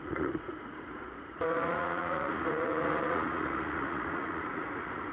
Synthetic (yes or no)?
yes